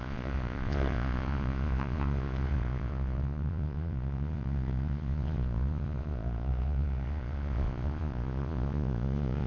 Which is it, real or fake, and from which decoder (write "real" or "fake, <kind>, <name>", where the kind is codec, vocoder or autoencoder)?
fake, vocoder, Vocos